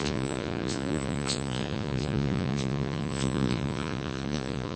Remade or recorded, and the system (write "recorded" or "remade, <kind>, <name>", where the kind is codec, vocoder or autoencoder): remade, vocoder, Vocos